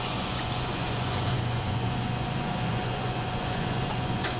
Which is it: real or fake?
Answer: fake